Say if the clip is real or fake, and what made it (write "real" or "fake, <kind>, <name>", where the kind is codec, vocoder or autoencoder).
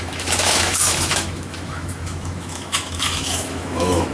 fake, autoencoder, DAC-VAE